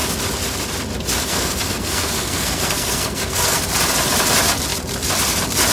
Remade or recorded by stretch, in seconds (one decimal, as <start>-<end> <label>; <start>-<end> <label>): 0.0-1.2 recorded; 1.2-3.6 remade; 3.6-5.7 recorded

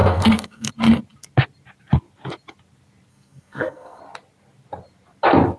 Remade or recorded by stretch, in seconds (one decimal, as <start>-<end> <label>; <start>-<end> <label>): 0.0-0.7 remade; 0.7-3.1 recorded; 3.1-4.0 remade; 4.0-5.6 recorded

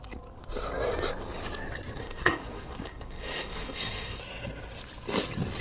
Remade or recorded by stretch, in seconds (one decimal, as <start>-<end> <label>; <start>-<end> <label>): 0.0-2.0 recorded; 2.0-4.2 remade; 4.2-5.6 recorded